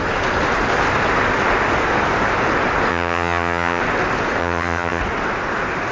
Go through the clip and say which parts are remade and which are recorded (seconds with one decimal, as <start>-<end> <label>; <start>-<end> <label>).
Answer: 0.0-2.9 recorded; 2.9-3.8 remade; 3.8-4.4 recorded; 4.4-5.0 remade; 5.0-5.9 recorded